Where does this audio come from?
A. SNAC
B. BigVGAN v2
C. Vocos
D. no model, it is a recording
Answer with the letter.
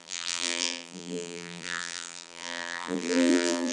B